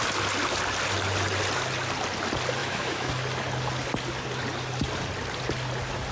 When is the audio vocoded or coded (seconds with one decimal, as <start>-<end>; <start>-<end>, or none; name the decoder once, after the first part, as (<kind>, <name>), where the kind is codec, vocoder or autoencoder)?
2.6-3.1 (autoencoder, DAC-VAE)